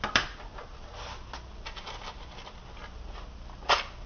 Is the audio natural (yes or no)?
yes